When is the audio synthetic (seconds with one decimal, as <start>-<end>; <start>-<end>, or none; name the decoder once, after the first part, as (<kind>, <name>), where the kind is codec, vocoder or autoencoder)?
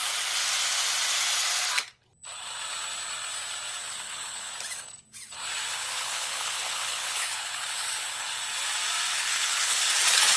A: 3.8-4.5 (codec, HILCodec); 5.7-8.4; 9.1-9.9